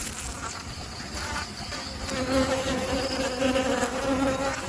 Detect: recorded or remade recorded